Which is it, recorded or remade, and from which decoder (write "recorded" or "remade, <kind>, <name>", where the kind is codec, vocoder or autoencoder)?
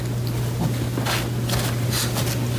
recorded